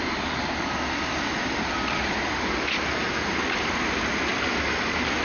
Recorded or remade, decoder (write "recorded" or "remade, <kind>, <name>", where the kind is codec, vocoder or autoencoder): recorded